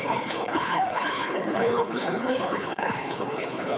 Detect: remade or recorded remade